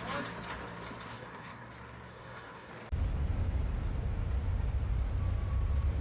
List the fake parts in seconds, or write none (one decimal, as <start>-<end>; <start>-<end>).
1.1-1.7; 2.1-2.7